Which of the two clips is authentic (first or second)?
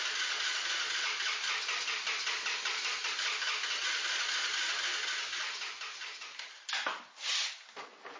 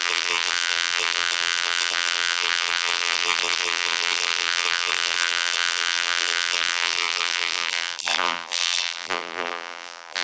first